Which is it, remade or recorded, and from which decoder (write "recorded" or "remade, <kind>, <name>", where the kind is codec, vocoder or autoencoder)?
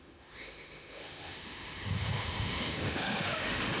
remade, autoencoder, DAC-VAE